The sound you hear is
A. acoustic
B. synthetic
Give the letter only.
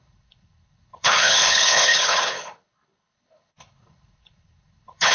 B